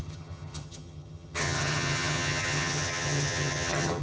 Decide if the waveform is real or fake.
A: fake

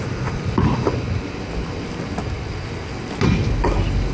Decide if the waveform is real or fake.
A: real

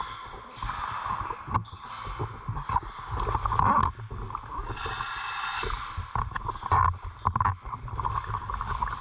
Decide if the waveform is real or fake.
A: real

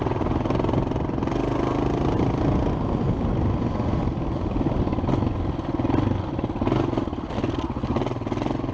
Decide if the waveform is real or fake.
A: real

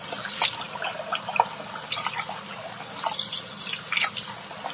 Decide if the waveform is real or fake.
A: real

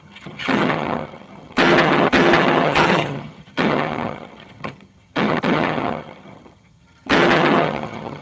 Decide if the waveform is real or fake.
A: fake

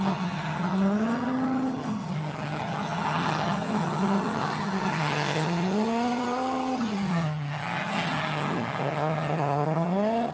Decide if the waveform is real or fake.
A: fake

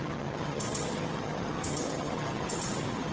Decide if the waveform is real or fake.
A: fake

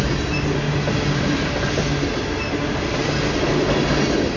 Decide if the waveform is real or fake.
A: real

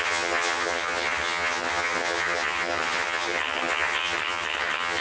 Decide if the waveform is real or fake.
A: fake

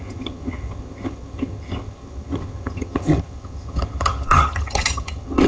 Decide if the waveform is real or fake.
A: fake